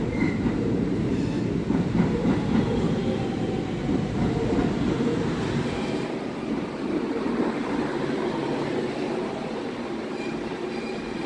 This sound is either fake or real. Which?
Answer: fake